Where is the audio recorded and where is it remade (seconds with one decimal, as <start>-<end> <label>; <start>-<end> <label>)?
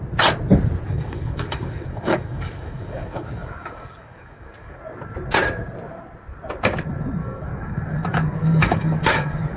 0.0-0.9 recorded; 0.9-4.8 remade; 4.8-7.2 recorded; 7.2-9.6 remade